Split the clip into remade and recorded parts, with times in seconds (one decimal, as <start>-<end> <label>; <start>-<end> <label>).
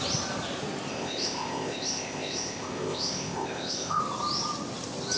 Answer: 0.0-0.9 recorded; 0.9-4.0 remade; 4.0-5.2 recorded